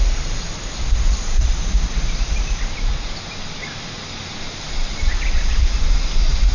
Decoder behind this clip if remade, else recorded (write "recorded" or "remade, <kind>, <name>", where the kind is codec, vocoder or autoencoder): recorded